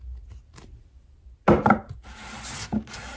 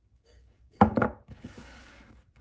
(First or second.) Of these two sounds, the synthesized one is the second